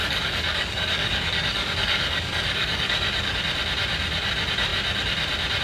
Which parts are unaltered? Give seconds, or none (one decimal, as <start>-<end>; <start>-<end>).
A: 3.4-5.6